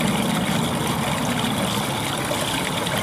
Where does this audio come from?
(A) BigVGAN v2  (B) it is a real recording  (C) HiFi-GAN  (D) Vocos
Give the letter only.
B